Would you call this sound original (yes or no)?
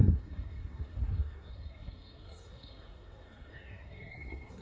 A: no